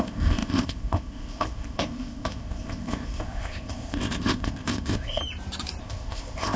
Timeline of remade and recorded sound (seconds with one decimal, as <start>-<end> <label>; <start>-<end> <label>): 0.0-5.2 remade; 5.2-5.8 recorded; 5.8-6.6 remade